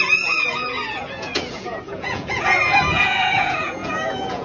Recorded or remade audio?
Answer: remade